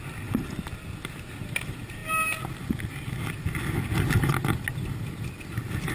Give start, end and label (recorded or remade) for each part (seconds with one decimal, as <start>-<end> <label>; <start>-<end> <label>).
0.0-5.9 recorded